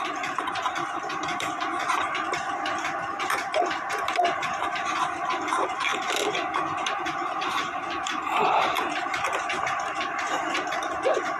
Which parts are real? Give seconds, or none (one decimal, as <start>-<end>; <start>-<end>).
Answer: none